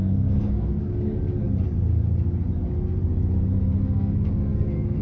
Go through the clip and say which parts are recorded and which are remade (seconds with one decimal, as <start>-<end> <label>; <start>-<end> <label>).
0.0-0.9 remade; 0.9-3.8 recorded; 3.8-5.0 remade